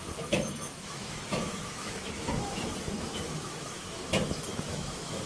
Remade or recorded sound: remade